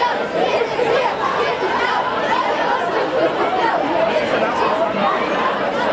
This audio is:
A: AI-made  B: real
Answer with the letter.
A